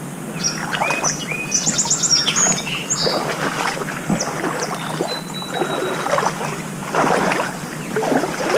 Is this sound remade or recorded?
recorded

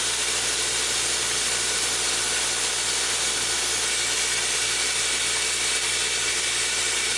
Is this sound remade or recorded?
recorded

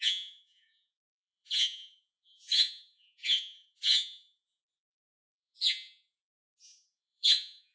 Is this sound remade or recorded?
remade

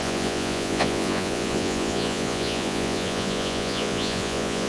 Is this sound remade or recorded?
remade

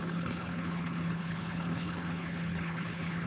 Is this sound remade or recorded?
remade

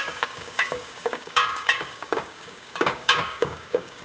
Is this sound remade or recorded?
remade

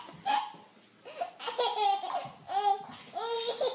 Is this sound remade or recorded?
recorded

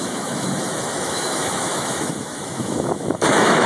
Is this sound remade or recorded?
remade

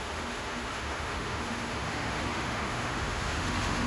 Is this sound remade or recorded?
remade